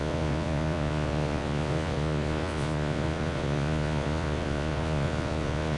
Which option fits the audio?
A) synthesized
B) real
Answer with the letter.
A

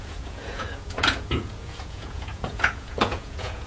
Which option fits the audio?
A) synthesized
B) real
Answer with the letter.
A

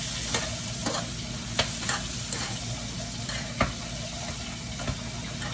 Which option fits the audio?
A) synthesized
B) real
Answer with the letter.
B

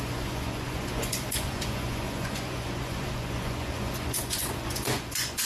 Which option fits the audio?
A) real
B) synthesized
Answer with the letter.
B